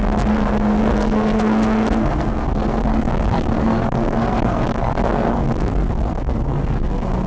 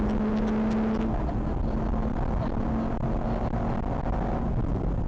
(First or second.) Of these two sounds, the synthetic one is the first